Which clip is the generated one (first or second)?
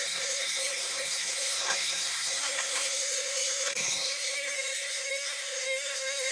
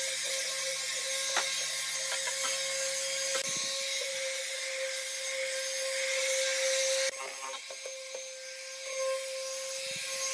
first